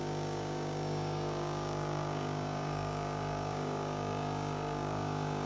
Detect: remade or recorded remade